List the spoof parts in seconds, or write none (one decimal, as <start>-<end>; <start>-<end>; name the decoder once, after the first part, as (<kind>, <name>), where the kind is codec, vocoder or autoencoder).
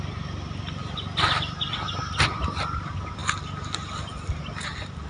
none